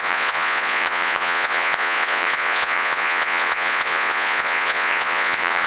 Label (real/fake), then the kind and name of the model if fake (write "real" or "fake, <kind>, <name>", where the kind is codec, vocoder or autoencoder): fake, vocoder, Vocos